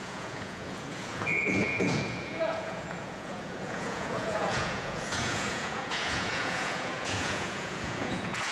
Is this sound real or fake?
fake